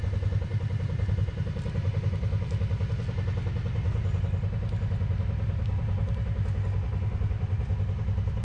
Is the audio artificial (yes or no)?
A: no